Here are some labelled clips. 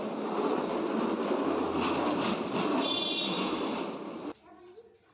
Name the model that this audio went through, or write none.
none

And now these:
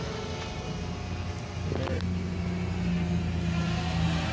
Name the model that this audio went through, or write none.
none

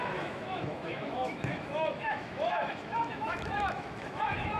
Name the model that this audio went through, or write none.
autoencoder, DAC-VAE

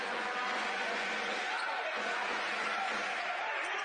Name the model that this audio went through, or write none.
vocoder, Vocos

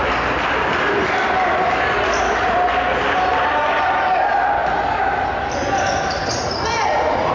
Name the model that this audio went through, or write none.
none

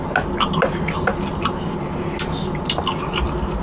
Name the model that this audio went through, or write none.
none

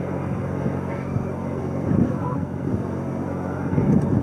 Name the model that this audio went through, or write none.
codec, SNAC